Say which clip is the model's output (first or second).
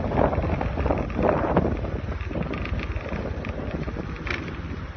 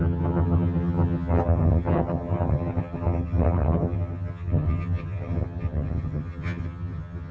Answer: second